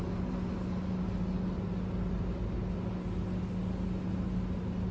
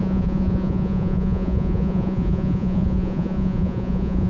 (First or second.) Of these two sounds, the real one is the first